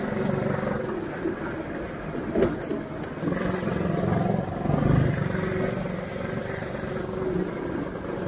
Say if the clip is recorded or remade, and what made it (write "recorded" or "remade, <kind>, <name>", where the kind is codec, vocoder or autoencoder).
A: recorded